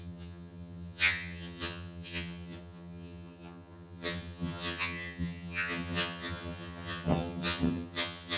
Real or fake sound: fake